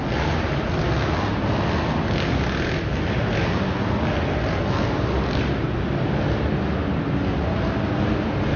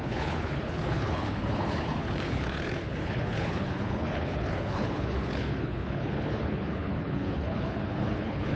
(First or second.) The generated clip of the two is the second